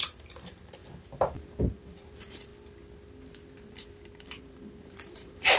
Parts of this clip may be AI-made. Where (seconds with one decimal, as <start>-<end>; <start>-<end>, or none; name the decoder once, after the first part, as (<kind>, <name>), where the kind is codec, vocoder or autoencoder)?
0.0-0.8 (vocoder, BigVGAN v2); 1.6-2.5; 4.2-5.6